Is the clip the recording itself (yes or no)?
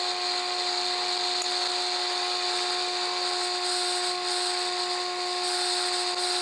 yes